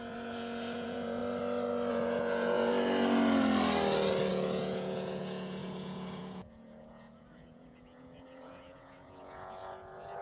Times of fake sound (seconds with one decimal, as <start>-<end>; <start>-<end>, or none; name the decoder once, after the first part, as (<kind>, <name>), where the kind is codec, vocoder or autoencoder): 0.0-1.2 (vocoder, Vocos); 1.9-2.7; 4.3-10.2